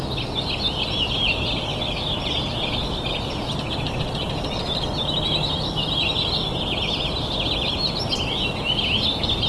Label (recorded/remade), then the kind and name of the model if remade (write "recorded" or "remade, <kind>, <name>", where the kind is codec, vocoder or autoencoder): recorded